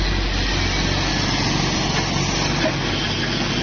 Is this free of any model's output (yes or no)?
yes